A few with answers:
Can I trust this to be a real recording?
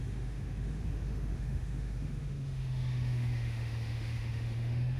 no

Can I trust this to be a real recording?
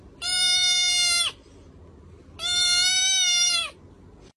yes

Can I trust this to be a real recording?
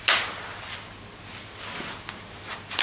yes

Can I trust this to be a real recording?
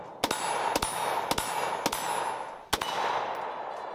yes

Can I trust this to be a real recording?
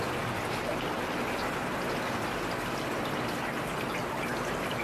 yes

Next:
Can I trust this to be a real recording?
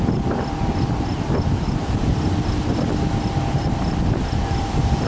yes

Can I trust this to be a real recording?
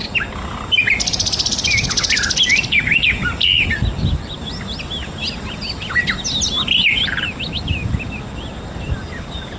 yes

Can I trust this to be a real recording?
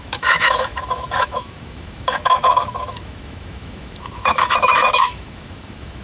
no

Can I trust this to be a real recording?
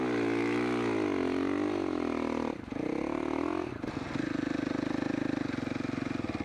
yes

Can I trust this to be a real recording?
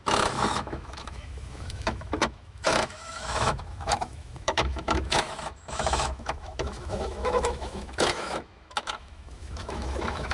no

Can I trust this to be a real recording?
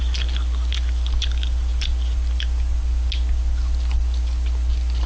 yes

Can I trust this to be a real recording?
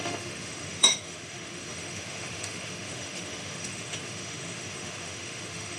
no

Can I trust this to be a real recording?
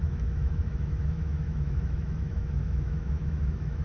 no